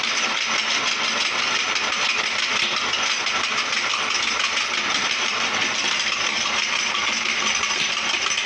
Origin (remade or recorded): remade